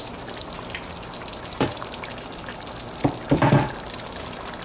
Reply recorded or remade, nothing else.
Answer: recorded